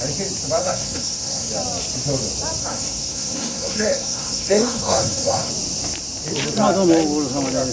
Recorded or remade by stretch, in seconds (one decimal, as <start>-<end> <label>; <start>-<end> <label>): 0.0-0.6 recorded; 0.6-1.5 remade; 1.5-2.6 recorded; 2.6-5.5 remade; 5.5-7.7 recorded